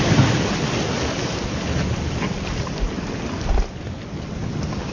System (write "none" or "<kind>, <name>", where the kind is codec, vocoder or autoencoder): none